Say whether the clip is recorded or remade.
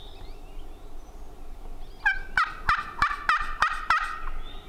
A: recorded